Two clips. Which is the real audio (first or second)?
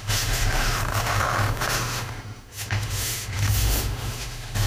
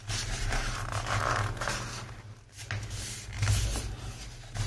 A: second